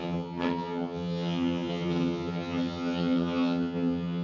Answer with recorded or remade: remade